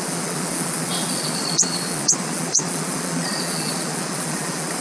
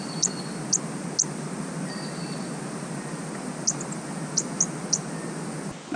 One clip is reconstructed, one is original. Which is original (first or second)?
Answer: second